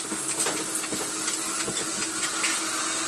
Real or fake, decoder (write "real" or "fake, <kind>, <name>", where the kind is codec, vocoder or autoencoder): real